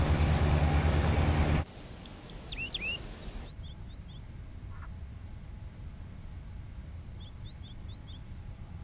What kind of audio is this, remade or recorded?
recorded